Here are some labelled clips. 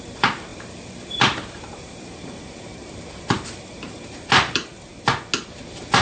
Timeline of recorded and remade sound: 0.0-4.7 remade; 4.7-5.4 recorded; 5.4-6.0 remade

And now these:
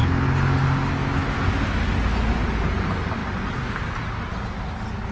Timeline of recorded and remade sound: 0.0-5.1 recorded

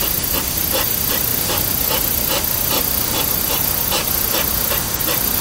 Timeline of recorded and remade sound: 0.0-5.4 recorded